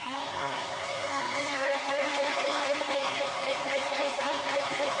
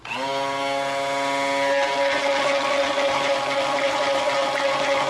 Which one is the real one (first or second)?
second